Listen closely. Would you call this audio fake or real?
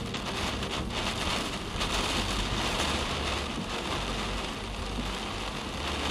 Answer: real